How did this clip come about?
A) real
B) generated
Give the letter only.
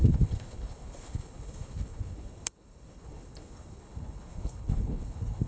B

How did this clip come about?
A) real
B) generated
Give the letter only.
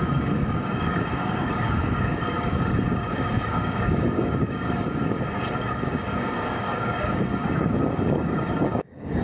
B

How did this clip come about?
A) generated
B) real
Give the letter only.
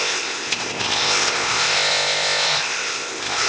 A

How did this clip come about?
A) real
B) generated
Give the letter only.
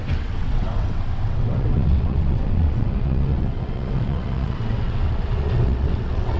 B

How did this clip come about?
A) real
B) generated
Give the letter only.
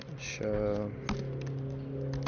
A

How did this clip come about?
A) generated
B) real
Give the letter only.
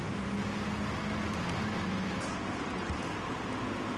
B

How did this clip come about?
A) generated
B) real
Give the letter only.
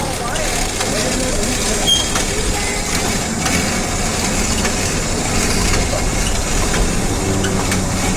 B